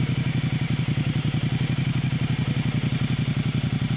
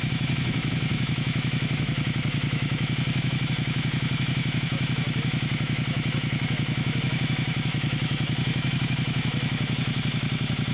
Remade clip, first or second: second